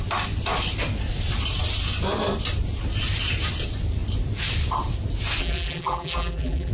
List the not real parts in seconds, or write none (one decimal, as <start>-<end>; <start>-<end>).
5.4-6.7